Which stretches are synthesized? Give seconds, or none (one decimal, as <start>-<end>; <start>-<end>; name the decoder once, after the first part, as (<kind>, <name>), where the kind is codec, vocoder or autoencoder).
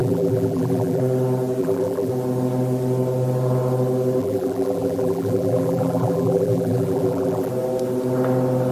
0.0-1.0 (vocoder, BigVGAN v2); 1.6-2.1; 4.2-7.5